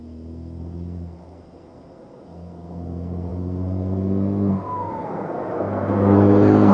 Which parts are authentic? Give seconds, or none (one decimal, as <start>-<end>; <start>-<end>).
none